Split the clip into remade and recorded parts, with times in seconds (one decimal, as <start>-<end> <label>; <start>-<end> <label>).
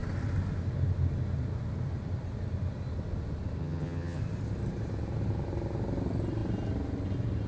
0.0-3.6 recorded; 3.6-4.2 remade; 4.2-7.5 recorded